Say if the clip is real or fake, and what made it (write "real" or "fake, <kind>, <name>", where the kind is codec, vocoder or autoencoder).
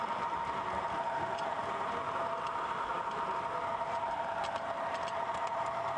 real